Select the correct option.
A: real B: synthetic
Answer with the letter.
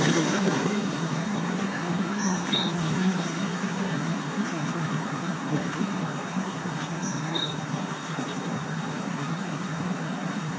B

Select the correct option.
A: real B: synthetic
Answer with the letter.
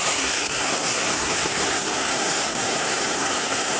B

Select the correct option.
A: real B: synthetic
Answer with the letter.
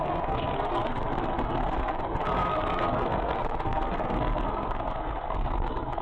B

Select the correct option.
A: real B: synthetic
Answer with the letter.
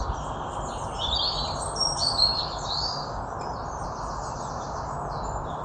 A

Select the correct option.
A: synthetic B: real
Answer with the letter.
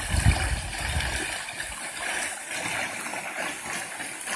B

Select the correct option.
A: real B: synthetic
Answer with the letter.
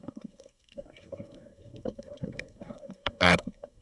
B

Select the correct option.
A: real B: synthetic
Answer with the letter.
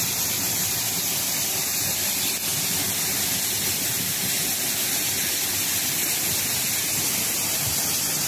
A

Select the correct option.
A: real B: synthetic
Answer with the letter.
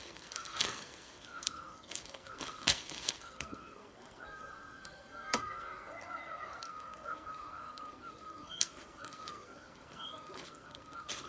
B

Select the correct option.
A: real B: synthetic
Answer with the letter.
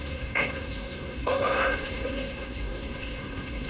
B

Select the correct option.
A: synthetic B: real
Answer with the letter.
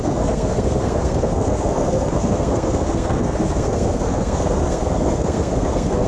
A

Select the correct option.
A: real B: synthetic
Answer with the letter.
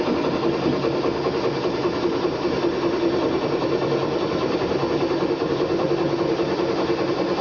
A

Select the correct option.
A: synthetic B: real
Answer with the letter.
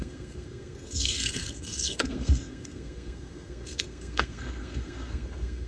A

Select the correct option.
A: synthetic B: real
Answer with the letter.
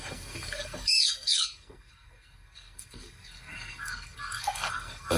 A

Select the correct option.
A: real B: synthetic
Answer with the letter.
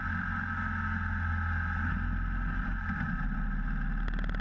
A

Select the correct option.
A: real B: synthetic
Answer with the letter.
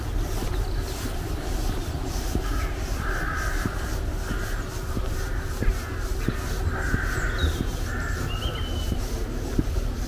A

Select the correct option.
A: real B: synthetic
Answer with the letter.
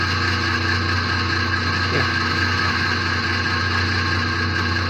A